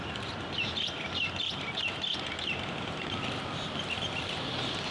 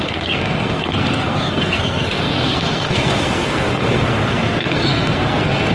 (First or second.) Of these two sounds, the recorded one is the first